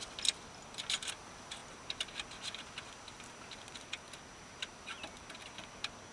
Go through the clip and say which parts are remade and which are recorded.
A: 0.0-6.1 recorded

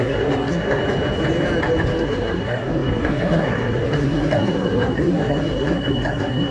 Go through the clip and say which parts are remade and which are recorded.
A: 0.0-0.8 remade; 0.8-2.0 recorded; 2.0-6.5 remade

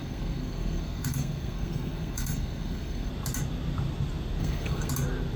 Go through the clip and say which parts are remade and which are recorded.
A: 0.0-3.1 remade; 3.1-4.4 recorded; 4.4-4.9 remade; 4.9-5.4 recorded

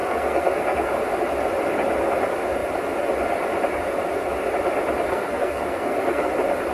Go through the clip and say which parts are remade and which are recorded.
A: 0.0-0.9 remade; 0.9-5.1 recorded; 5.1-6.3 remade; 6.3-6.7 recorded

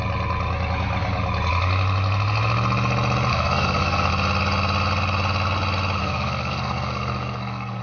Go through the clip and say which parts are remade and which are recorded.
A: 0.0-3.3 recorded; 3.3-4.1 remade; 4.1-6.0 recorded; 6.0-7.8 remade

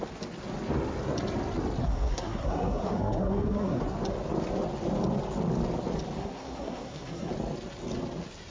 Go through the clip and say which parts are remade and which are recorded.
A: 0.0-1.8 recorded; 1.8-3.8 remade; 3.8-6.2 recorded; 6.2-7.3 remade; 7.3-8.5 recorded

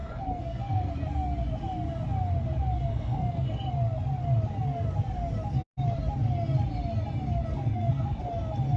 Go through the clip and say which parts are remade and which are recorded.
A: 0.0-0.9 remade; 0.9-2.9 recorded; 2.9-3.7 remade; 3.7-7.5 recorded; 7.5-8.2 remade; 8.2-8.8 recorded